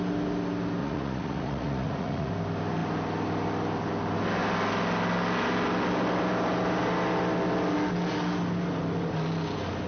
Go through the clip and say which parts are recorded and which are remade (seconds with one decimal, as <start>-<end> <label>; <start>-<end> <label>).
0.0-0.8 recorded; 0.8-2.3 remade; 2.3-9.9 recorded